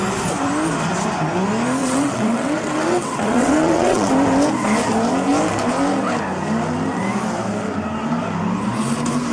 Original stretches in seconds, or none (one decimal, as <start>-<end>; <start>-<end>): 0.0-1.8; 4.1-9.3